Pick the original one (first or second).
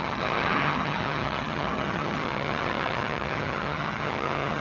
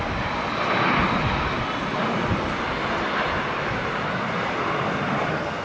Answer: second